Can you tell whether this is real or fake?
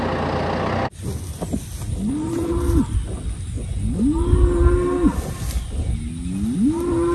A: real